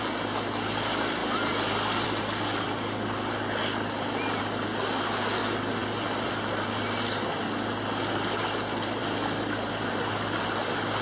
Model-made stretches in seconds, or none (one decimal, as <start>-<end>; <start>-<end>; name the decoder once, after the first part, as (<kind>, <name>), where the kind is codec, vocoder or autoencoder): none